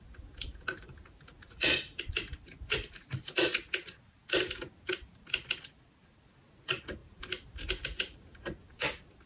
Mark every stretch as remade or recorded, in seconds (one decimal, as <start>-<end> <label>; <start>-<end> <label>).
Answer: 0.0-4.2 remade; 4.2-4.9 recorded; 4.9-9.3 remade